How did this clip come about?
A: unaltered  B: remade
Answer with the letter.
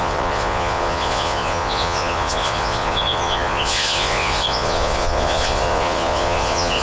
B